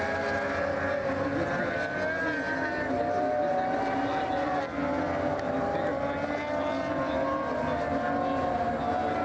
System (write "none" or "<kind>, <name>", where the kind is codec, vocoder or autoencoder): none